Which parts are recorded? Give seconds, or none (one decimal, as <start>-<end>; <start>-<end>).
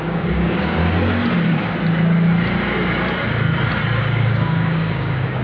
0.8-4.0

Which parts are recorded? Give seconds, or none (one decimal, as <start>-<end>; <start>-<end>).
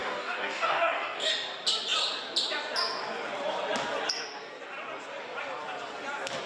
1.3-6.5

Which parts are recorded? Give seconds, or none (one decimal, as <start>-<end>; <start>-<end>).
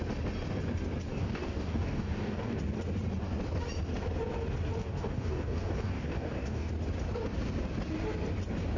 0.0-1.1; 2.6-4.8; 6.7-8.8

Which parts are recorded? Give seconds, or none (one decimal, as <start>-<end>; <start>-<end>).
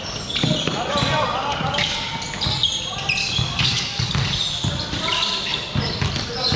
0.0-1.5; 2.1-3.2; 4.1-6.6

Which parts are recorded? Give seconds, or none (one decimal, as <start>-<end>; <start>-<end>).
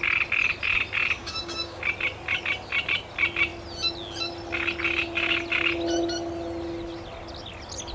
0.0-1.2; 1.8-7.9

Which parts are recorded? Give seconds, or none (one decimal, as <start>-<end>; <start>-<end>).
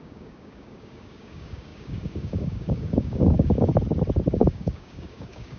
3.7-4.3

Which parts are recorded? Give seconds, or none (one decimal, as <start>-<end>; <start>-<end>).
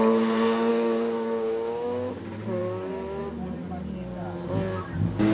0.0-0.7; 2.1-5.3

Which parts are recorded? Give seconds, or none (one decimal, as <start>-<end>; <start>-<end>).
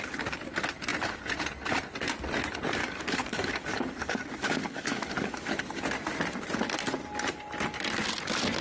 0.0-2.8; 5.6-8.6